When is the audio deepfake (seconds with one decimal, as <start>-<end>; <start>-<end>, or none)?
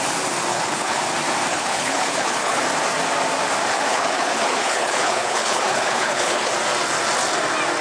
0.5-1.0; 1.5-2.6; 3.7-6.5